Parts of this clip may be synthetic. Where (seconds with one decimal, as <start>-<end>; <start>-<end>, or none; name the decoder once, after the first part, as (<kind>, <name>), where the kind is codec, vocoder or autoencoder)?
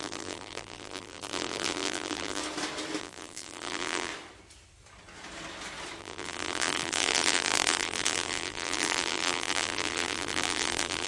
0.0-2.4 (vocoder, BigVGAN v2); 3.0-4.1; 6.0-11.1